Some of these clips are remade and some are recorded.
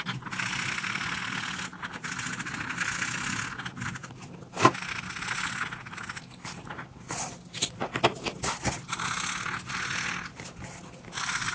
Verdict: recorded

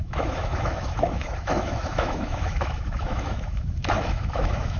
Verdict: remade